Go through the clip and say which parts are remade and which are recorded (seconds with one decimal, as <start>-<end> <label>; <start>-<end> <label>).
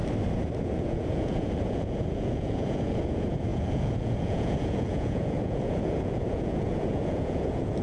0.0-0.6 recorded; 0.6-7.8 remade